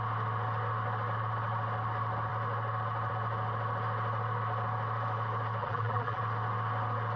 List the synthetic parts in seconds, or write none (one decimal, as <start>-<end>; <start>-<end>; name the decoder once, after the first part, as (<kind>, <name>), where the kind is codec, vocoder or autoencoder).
5.6-6.2 (vocoder, BigVGAN v2)